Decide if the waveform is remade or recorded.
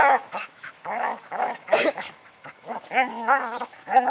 remade